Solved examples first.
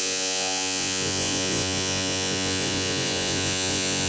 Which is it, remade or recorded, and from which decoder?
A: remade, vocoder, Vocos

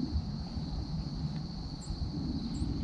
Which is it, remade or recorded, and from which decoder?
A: recorded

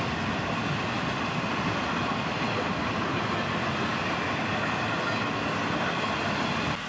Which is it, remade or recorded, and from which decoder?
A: recorded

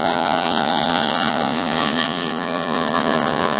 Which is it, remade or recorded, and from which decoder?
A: remade, vocoder, Vocos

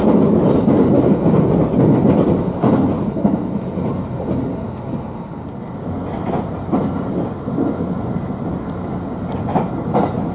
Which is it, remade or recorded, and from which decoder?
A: recorded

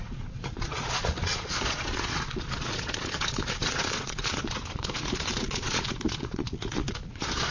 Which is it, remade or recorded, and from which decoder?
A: remade, vocoder, Vocos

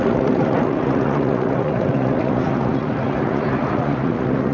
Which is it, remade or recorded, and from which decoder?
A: remade, vocoder, Vocos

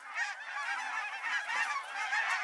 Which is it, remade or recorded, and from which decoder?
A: recorded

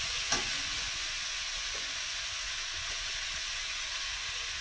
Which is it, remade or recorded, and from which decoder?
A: remade, vocoder, Vocos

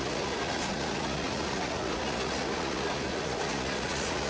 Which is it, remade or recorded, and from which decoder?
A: remade, vocoder, Vocos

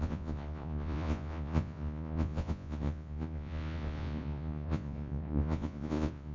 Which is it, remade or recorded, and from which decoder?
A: remade, vocoder, Vocos